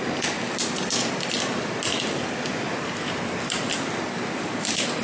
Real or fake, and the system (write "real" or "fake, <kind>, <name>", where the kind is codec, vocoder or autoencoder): real